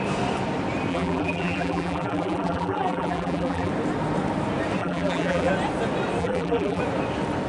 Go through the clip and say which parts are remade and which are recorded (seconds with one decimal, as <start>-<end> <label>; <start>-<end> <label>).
0.0-0.9 recorded; 0.9-3.7 remade; 3.7-4.8 recorded; 4.8-5.5 remade; 5.5-6.2 recorded; 6.2-6.8 remade; 6.8-7.5 recorded